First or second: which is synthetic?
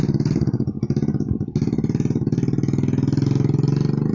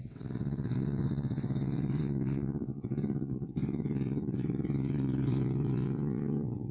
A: second